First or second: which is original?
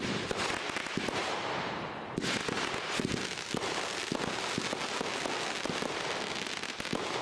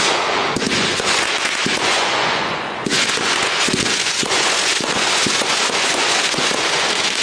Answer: first